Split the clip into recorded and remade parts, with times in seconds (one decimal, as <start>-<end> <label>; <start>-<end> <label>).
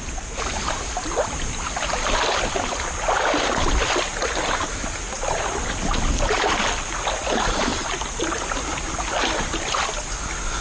0.0-10.6 recorded